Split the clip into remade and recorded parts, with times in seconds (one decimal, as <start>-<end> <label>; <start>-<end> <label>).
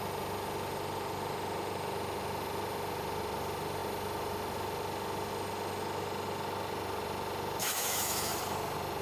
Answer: 0.0-7.6 recorded; 7.6-8.3 remade; 8.3-9.0 recorded